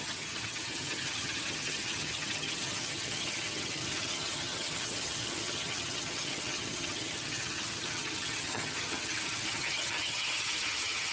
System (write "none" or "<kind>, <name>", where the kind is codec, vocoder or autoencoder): vocoder, HiFi-GAN